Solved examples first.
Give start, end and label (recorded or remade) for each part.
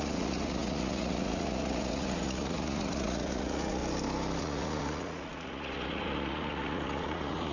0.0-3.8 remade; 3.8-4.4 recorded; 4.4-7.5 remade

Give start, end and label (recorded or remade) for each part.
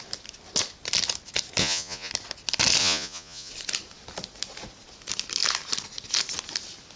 0.0-1.6 recorded; 1.6-2.1 remade; 2.1-2.8 recorded; 2.8-3.5 remade; 3.5-7.0 recorded